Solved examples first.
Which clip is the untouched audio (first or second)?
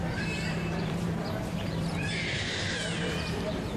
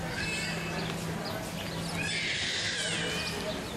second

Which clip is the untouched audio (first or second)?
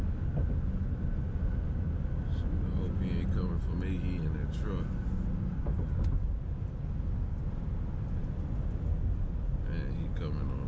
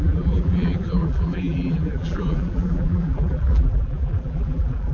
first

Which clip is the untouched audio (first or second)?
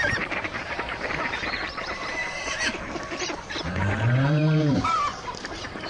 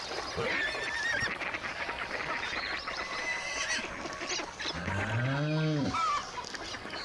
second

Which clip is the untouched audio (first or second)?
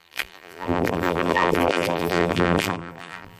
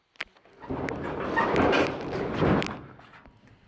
second